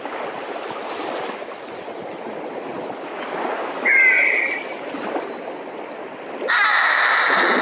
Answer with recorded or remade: recorded